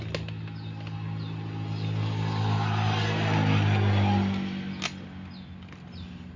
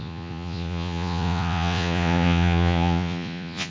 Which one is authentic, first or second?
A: first